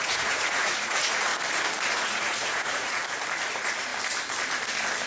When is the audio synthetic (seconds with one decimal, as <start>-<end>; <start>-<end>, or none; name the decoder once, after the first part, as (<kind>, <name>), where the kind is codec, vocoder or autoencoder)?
0.0-1.3 (vocoder, Vocos); 1.9-3.0; 3.5-3.9